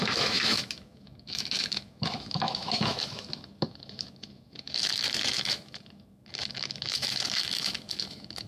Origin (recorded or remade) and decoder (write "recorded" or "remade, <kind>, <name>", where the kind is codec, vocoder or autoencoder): remade, autoencoder, DAC-VAE